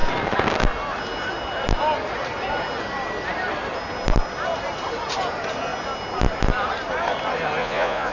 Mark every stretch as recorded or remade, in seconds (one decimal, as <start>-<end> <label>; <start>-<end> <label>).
0.0-7.6 recorded; 7.6-8.1 remade